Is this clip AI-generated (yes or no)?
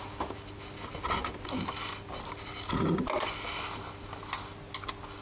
no